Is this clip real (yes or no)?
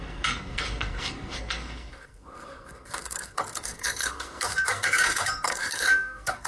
no